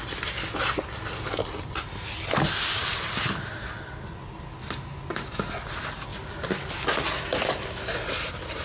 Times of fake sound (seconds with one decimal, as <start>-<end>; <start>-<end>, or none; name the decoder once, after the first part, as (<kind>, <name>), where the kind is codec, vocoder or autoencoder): none